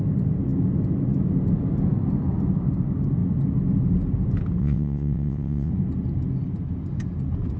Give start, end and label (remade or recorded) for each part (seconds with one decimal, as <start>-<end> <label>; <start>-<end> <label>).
0.0-4.6 recorded; 4.6-5.7 remade; 5.7-7.6 recorded